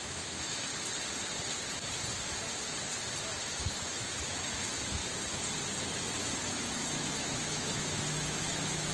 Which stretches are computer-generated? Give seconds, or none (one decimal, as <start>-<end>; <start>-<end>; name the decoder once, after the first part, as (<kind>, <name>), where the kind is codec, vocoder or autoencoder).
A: 0.0-0.7 (autoencoder, DAC-VAE); 3.6-5.0; 5.8-8.9